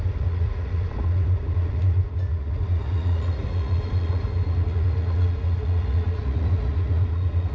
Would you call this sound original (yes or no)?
no